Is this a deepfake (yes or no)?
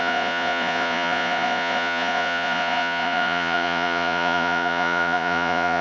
yes